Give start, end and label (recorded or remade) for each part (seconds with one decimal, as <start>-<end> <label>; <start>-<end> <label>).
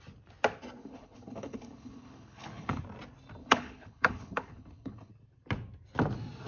0.0-0.8 recorded; 0.8-2.8 remade; 2.8-3.4 recorded; 3.4-5.1 remade; 5.1-6.5 recorded